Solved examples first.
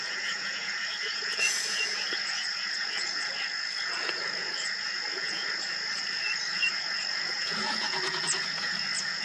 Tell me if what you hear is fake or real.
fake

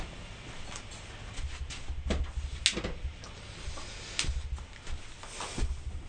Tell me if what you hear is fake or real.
real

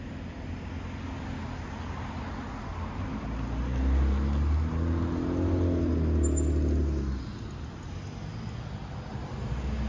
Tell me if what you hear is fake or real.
real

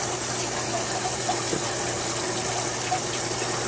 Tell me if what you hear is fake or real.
real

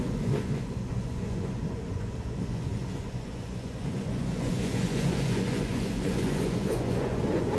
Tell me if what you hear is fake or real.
fake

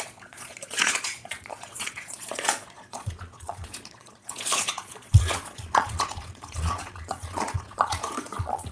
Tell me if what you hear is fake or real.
fake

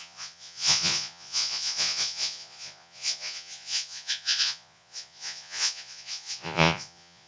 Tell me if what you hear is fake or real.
fake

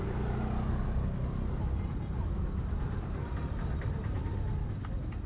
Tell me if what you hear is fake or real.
real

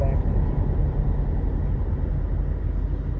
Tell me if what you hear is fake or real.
real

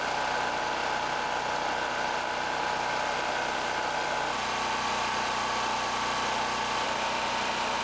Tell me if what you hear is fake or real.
real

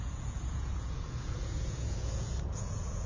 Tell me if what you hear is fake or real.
fake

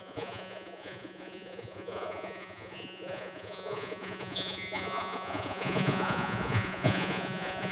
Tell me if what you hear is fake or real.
fake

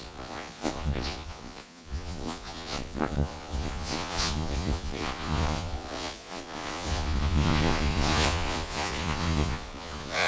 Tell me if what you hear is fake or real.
fake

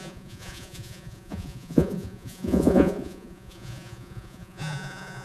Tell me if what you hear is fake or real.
fake